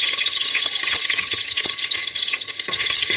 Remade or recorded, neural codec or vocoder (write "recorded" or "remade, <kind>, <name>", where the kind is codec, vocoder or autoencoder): remade, vocoder, HiFi-GAN